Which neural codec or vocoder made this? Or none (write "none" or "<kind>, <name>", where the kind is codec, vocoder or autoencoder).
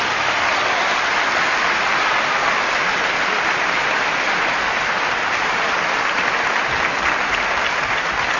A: none